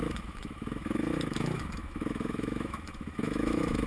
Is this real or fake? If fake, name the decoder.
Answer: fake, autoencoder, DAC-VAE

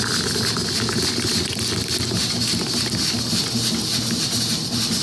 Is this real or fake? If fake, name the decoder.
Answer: real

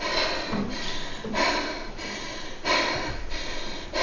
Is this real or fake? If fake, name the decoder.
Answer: real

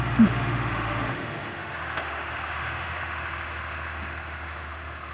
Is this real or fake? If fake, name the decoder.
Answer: fake, autoencoder, DAC-VAE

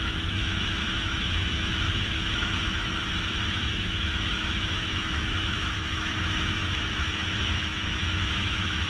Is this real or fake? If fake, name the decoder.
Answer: fake, autoencoder, DAC-VAE